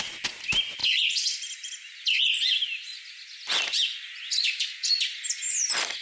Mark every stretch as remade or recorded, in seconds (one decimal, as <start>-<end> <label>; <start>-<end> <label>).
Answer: 0.0-6.0 recorded